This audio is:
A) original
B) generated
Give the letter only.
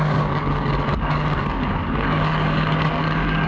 B